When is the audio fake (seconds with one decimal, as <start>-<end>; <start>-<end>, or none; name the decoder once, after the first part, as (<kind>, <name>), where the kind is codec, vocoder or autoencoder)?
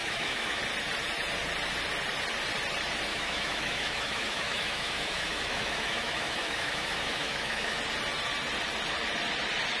0.0-0.6 (autoencoder, DAC-VAE); 3.1-7.8